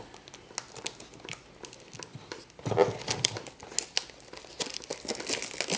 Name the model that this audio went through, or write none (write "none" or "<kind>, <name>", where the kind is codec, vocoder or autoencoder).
none